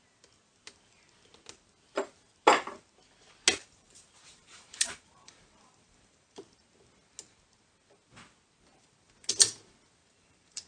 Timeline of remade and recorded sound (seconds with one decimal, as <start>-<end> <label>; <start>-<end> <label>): 0.0-3.6 recorded; 3.6-6.4 remade; 6.4-10.0 recorded; 10.0-10.7 remade